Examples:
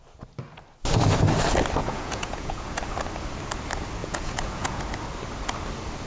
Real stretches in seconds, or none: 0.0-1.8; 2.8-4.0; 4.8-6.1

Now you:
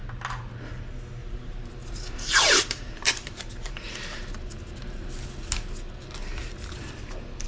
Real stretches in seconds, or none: 0.0-1.2; 4.2-7.5

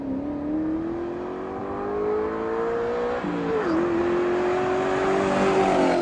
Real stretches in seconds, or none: 0.0-6.0

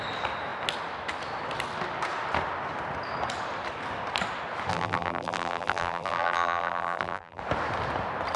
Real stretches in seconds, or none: 0.0-4.7; 7.4-8.4

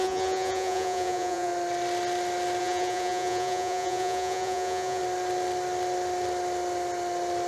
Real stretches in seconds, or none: 1.5-2.6; 5.0-7.5

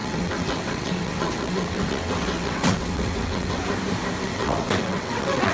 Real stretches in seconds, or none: 3.6-4.2

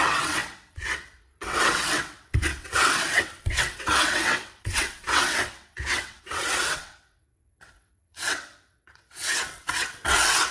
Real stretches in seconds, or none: none

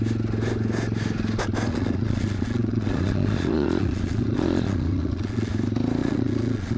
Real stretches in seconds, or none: 0.0-1.7; 5.5-6.0